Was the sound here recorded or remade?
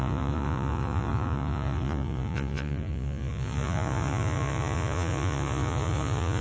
remade